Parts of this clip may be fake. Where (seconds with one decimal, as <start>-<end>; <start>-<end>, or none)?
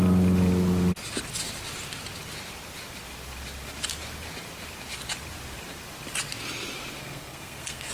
7.0-7.9